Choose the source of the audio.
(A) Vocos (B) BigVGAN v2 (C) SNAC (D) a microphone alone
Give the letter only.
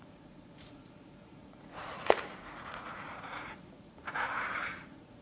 A